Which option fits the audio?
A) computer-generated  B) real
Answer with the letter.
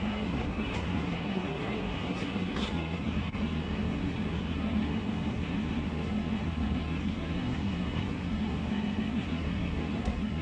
A